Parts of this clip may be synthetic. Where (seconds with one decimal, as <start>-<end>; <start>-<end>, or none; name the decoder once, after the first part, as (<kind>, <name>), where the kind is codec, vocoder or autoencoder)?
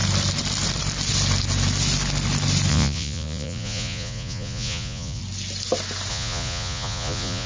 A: 2.7-5.2 (vocoder, Vocos); 6.1-7.5